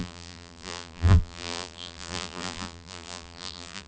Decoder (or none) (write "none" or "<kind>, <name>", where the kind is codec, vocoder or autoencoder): vocoder, BigVGAN v2